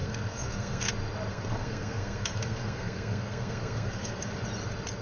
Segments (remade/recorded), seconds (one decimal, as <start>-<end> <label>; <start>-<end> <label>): 0.0-0.9 remade; 0.9-1.3 recorded; 1.3-4.3 remade; 4.3-5.0 recorded